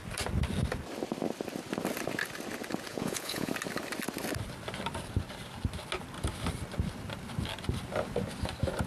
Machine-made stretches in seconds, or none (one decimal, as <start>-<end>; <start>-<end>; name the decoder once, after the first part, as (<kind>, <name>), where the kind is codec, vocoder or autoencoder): 2.9-3.5 (vocoder, Vocos)